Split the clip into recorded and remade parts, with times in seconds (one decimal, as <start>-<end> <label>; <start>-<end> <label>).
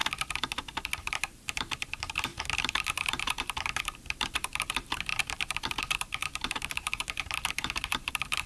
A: 0.0-1.0 recorded; 1.0-8.5 remade